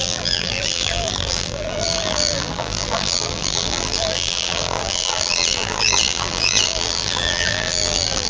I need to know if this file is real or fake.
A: fake